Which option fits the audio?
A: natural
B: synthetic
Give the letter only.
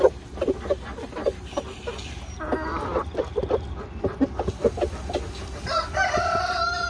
A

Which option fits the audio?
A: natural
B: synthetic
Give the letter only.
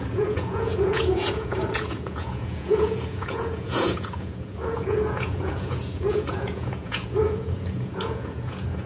B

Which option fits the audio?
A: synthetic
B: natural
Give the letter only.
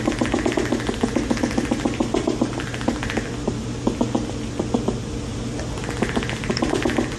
B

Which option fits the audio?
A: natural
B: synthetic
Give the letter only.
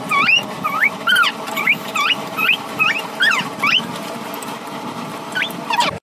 B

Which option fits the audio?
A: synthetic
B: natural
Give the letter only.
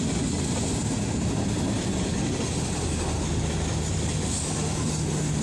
B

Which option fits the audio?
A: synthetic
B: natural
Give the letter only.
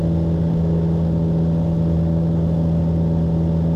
B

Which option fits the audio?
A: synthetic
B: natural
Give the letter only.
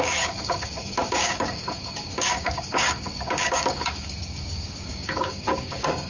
A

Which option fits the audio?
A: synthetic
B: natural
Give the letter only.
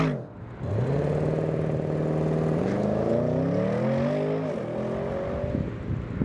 B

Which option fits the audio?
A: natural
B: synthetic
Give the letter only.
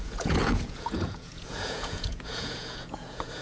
B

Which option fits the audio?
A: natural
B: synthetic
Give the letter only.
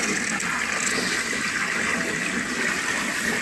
A